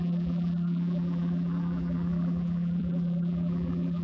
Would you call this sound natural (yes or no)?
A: no